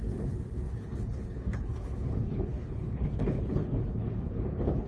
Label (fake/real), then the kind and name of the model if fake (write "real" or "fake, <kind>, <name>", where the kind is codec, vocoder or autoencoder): fake, codec, HILCodec